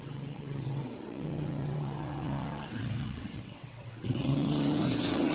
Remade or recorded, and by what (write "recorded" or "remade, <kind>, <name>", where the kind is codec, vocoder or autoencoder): remade, vocoder, WaveNeXt